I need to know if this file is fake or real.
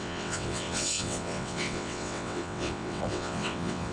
fake